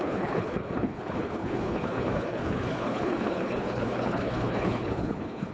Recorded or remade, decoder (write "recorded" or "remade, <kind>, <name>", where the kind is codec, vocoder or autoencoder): remade, codec, HILCodec